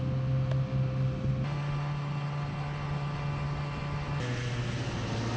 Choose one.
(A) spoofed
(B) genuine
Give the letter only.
B